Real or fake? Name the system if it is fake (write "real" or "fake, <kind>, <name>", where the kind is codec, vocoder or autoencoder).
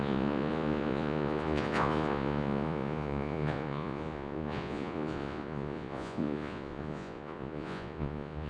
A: fake, vocoder, Vocos